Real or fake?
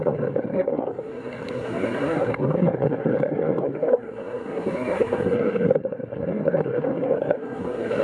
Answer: fake